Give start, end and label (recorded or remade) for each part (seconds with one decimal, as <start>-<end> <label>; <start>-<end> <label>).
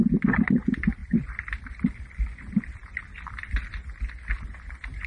0.0-1.0 recorded; 1.0-4.1 remade; 4.1-5.1 recorded